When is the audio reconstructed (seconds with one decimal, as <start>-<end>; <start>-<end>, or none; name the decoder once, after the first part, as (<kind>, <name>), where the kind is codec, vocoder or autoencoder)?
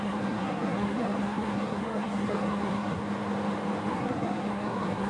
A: 0.0-3.0 (codec, SNAC); 3.9-5.1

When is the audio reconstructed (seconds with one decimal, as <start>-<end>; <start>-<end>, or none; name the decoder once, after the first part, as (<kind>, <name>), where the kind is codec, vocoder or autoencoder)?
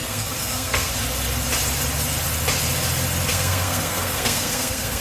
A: 0.0-0.9 (codec, SNAC); 3.3-5.0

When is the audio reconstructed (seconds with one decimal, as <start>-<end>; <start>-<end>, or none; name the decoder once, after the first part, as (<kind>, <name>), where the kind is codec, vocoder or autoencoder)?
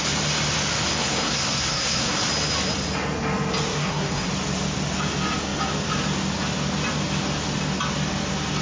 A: 1.0-2.3 (codec, SNAC); 3.8-4.3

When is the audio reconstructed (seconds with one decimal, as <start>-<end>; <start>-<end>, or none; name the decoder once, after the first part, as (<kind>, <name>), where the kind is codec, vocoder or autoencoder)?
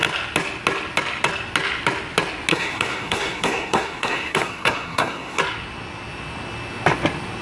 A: 2.5-5.4 (codec, SNAC)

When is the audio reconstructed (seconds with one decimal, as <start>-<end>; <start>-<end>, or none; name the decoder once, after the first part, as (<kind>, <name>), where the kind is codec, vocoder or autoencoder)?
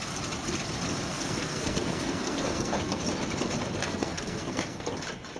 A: 1.1-3.0 (codec, SNAC); 3.8-4.9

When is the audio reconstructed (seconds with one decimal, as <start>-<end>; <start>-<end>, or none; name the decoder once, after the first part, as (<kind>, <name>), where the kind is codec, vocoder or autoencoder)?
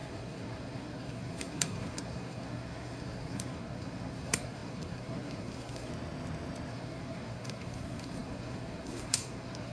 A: 0.0-5.9 (codec, SNAC); 6.7-9.7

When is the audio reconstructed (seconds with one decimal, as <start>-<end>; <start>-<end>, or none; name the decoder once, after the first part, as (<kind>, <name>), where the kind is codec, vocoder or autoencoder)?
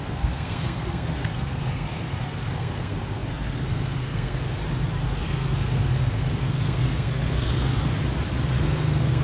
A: 0.0-4.6 (codec, SNAC); 5.2-7.9; 8.5-9.2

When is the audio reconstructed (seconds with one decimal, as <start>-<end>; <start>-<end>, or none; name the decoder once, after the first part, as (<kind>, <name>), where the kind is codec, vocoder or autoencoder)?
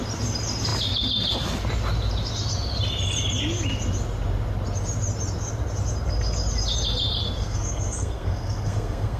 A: 7.4-9.2 (codec, SNAC)